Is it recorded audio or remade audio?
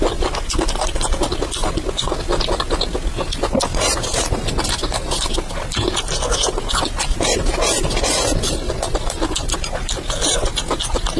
recorded